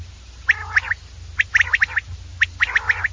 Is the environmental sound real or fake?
real